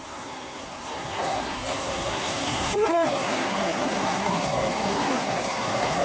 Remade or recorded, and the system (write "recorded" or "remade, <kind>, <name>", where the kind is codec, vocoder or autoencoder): remade, codec, SNAC